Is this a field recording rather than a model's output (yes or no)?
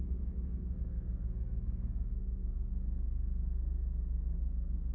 no